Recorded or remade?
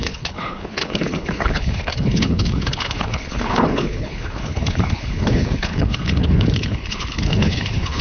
remade